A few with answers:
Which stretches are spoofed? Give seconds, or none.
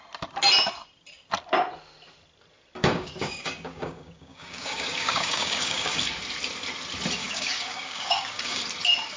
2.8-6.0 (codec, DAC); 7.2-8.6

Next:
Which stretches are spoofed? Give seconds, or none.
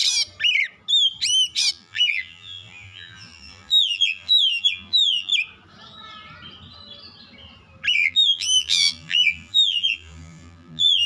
1.7-5.3 (vocoder, BigVGAN v2); 7.9-11.1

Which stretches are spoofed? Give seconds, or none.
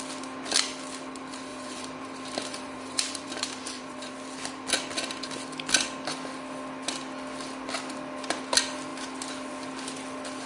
1.5-4.1 (vocoder, BigVGAN v2)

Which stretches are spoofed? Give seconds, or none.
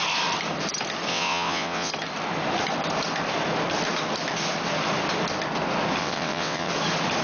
1.1-1.9 (vocoder, WaveNeXt); 6.0-6.7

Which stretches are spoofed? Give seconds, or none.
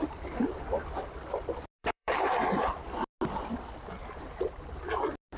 1.8-2.7 (vocoder, BigVGAN v2); 4.0-4.6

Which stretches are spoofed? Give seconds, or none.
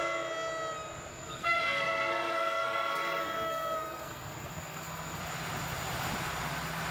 1.1-5.2 (codec, SNAC)